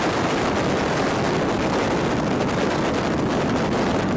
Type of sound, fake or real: real